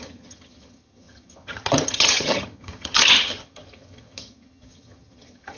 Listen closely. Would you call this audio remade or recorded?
remade